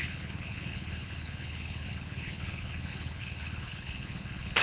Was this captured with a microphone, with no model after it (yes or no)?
no